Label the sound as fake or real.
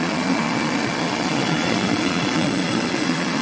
fake